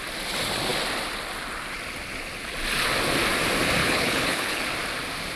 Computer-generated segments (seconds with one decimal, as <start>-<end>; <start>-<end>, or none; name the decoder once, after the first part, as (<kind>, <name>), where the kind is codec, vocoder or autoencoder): 3.8-4.6 (codec, HILCodec)